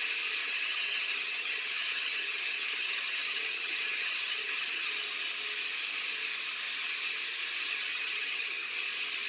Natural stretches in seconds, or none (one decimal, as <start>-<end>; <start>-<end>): 0.0-0.4; 4.9-7.9; 8.7-9.3